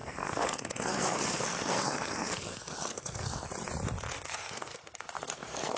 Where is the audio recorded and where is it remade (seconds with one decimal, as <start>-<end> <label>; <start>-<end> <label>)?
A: 0.0-3.5 remade; 3.5-4.1 recorded; 4.1-5.8 remade